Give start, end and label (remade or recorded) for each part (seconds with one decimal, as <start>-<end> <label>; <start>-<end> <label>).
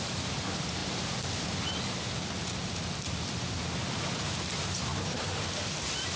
0.0-6.2 recorded